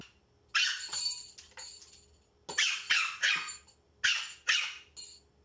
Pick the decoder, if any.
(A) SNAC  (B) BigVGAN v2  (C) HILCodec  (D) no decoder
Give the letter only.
D